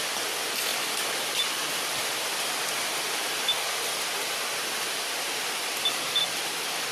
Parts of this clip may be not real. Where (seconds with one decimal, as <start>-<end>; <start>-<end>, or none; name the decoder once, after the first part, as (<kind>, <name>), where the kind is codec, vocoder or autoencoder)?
none